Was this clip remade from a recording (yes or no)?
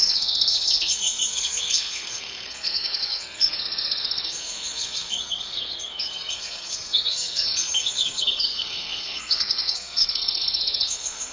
yes